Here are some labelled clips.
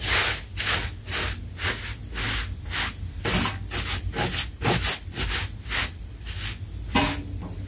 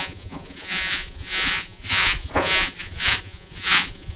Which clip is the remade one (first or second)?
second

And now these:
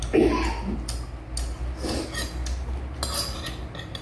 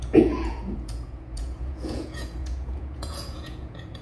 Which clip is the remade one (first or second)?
second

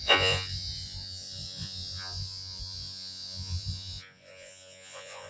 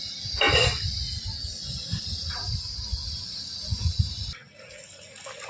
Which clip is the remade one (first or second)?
first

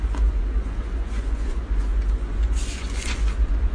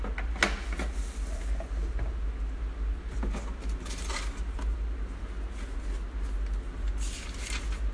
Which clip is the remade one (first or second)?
first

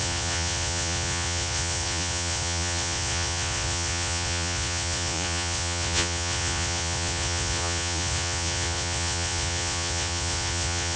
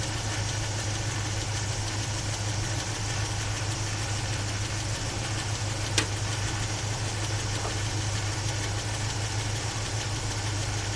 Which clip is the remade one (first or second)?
first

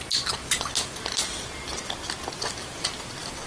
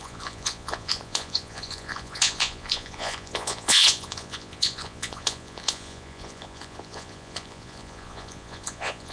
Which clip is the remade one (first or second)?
second